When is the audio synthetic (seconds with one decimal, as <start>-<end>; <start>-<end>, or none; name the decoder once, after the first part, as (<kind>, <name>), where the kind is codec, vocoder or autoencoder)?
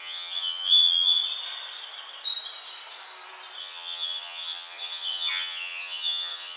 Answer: 0.0-1.2 (vocoder, HiFi-GAN); 3.6-6.6